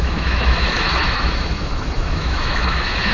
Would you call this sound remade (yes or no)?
yes